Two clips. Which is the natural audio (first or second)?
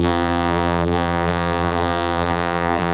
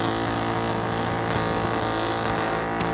second